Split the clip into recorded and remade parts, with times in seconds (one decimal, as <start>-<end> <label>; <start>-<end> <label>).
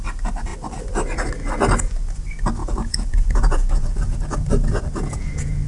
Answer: 0.0-2.6 recorded; 2.6-5.7 remade